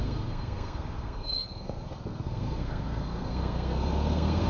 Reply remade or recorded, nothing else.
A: remade